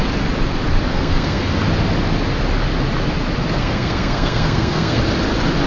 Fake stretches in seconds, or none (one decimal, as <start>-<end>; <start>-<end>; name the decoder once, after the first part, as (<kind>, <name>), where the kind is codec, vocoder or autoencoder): 0.9-1.5 (codec, SNAC); 3.6-5.0